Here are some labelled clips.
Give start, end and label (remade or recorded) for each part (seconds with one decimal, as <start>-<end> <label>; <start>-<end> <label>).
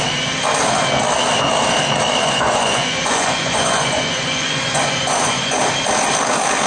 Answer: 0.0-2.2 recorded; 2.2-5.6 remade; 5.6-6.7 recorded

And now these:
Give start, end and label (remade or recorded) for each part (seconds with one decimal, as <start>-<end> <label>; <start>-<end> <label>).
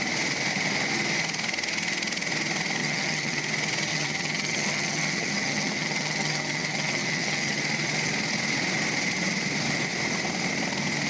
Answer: 0.0-2.8 recorded; 2.8-3.4 remade; 3.4-3.9 recorded; 3.9-7.6 remade; 7.6-11.1 recorded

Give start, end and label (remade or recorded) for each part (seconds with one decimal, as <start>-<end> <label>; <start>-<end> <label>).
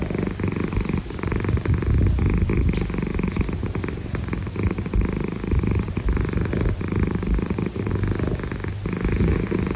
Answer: 0.0-0.6 recorded; 0.6-1.7 remade; 1.7-3.1 recorded; 3.1-7.9 remade; 7.9-9.8 recorded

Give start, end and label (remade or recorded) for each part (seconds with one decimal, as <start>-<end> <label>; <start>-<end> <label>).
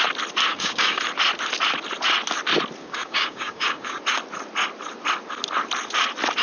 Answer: 0.0-0.5 recorded; 0.5-1.0 remade; 1.0-2.8 recorded; 2.8-4.0 remade; 4.0-6.4 recorded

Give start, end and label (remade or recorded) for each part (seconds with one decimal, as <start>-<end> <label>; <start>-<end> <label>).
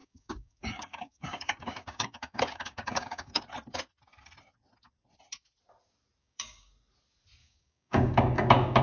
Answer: 0.0-3.4 remade; 3.4-6.2 recorded; 6.2-6.7 remade; 6.7-7.4 recorded; 7.4-8.8 remade